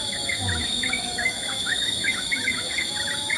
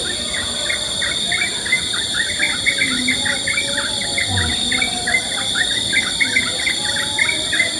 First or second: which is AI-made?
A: first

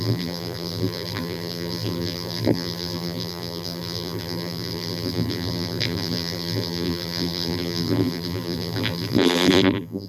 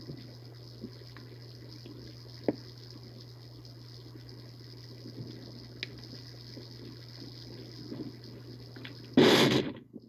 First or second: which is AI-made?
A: first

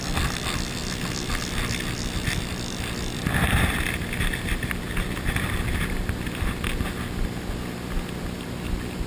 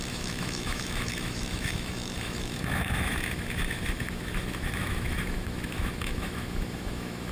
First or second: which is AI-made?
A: second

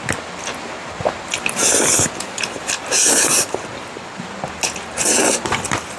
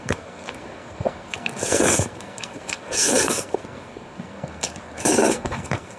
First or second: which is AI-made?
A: second